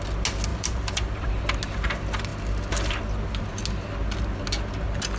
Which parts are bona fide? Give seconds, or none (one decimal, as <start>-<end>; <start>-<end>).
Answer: 0.0-0.5; 1.4-5.2